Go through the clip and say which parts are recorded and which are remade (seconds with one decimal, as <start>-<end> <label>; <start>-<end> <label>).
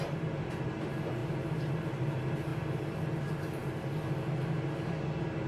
0.0-5.5 recorded